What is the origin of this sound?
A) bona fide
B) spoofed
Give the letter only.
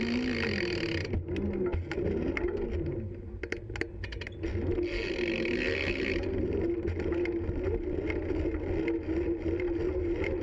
A